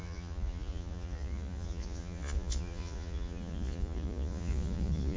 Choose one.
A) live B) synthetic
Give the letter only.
B